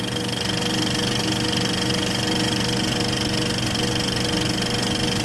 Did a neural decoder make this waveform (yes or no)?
no